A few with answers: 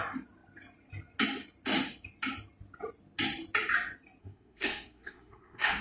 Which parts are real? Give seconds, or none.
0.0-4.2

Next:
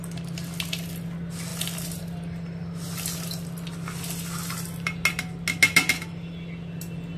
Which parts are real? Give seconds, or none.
0.0-7.2

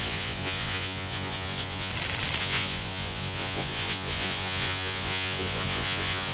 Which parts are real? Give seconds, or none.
1.9-2.4

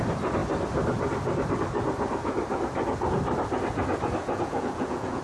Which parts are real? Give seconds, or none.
0.0-4.2